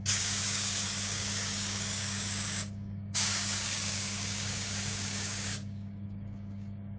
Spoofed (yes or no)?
yes